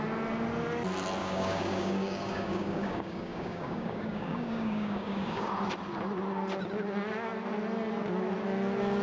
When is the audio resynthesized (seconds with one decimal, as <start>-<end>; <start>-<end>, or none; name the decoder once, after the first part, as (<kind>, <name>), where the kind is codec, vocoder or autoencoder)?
1.2-5.5 (codec, DAC)